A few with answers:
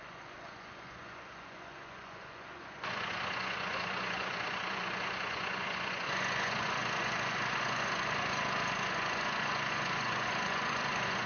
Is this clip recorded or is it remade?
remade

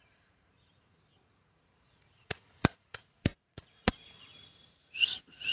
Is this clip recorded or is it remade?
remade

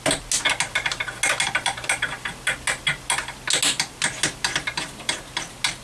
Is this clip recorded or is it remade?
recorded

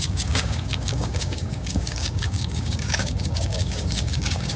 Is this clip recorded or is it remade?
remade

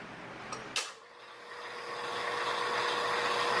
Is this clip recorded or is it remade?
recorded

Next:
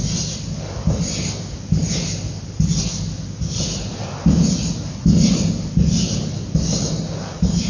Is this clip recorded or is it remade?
recorded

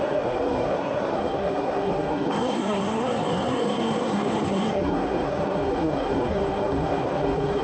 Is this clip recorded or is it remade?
remade